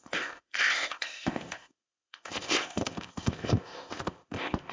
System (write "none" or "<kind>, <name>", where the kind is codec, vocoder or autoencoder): codec, ZipCodec